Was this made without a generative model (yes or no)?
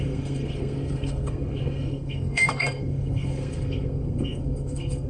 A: no